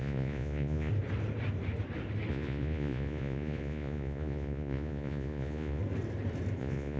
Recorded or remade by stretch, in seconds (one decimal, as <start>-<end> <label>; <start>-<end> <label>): 0.0-0.9 remade; 0.9-2.3 recorded; 2.3-5.8 remade; 5.8-6.6 recorded; 6.6-7.0 remade